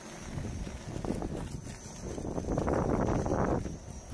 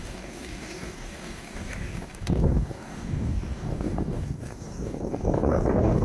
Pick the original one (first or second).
first